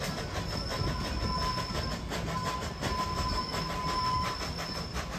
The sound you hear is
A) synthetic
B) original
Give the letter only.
B